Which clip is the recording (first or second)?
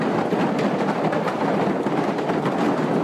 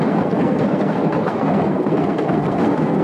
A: first